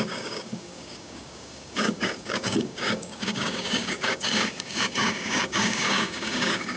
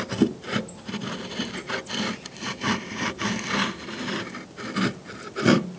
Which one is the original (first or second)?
second